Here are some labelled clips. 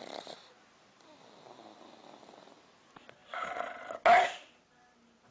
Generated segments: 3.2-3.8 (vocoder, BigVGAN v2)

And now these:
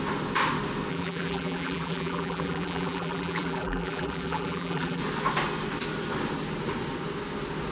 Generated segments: 0.9-5.0 (vocoder, BigVGAN v2)

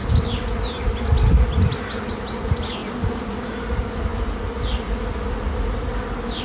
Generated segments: none

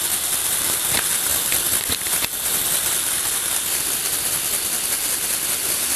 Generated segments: none

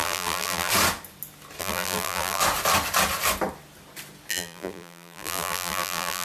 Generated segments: 0.0-0.7 (vocoder, BigVGAN v2); 1.6-2.4; 4.3-6.2

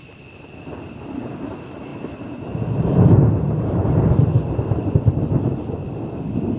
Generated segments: none